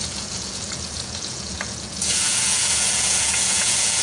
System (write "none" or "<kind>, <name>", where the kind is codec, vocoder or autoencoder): vocoder, Vocos